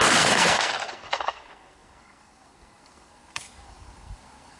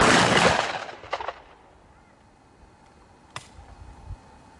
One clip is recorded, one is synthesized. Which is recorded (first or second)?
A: second